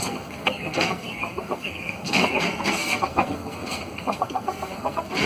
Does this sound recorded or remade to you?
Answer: remade